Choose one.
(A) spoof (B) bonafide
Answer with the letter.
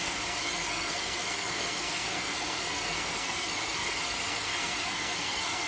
A